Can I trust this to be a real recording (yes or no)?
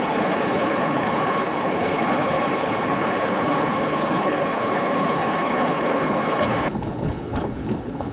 no